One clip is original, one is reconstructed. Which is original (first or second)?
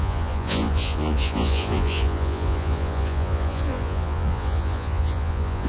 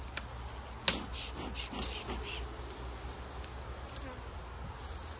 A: second